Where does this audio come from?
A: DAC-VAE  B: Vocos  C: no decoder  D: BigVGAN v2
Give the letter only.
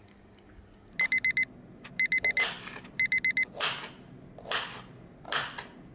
C